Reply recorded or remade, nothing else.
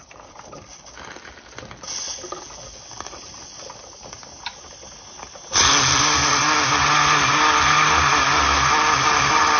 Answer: recorded